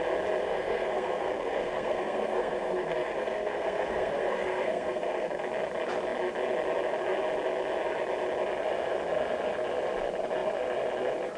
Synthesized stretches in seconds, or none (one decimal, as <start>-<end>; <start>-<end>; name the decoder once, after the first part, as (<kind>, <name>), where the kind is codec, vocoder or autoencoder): 0.4-5.4 (codec, SNAC)